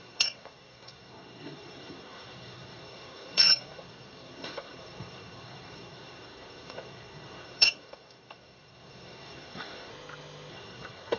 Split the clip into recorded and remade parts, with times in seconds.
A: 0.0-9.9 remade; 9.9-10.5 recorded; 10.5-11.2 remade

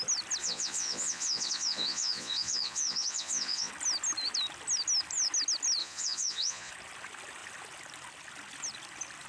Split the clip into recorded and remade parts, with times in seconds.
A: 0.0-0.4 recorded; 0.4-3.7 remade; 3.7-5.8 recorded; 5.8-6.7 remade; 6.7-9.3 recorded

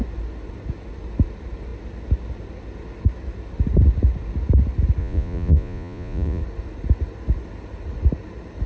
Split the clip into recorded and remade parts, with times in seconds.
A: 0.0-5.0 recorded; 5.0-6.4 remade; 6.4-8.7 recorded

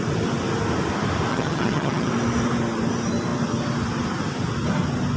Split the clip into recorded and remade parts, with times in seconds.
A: 0.0-1.3 recorded; 1.3-2.1 remade; 2.1-5.2 recorded